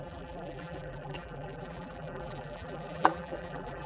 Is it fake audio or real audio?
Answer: fake